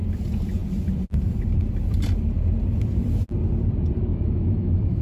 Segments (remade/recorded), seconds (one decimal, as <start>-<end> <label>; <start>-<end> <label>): 0.0-4.1 recorded; 4.1-5.0 remade